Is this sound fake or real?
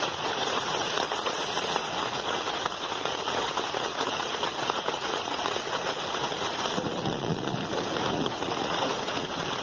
fake